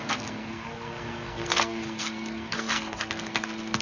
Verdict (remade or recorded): remade